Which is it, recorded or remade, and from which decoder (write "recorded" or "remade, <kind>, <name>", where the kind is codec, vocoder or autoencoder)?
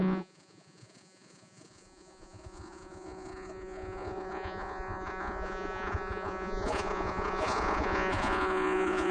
remade, vocoder, Vocos